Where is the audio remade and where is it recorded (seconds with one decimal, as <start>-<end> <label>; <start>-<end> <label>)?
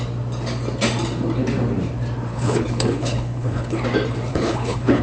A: 0.0-2.3 recorded; 2.3-3.8 remade; 3.8-4.3 recorded; 4.3-5.0 remade